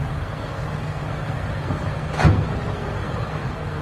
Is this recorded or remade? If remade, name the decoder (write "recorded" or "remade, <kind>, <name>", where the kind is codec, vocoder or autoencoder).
remade, codec, SNAC